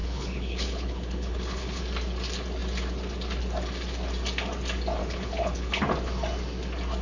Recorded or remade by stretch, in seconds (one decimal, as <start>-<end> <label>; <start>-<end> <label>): 0.0-1.8 remade; 1.8-5.0 recorded; 5.0-5.8 remade; 5.8-7.0 recorded